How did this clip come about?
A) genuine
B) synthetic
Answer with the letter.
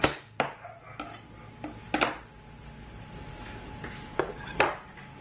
A